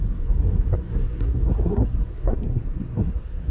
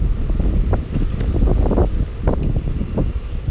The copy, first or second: first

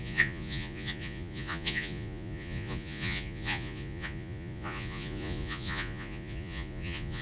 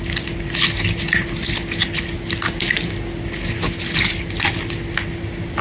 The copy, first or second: first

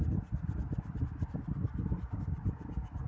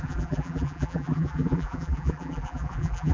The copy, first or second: second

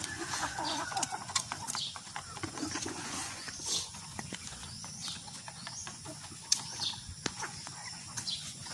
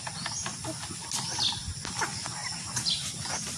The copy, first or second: first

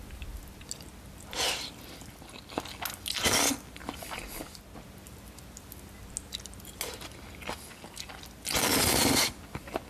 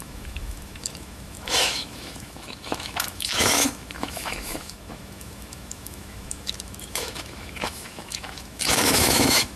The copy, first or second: second